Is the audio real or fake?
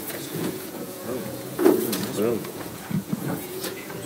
fake